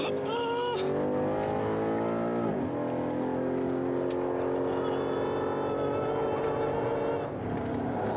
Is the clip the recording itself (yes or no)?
yes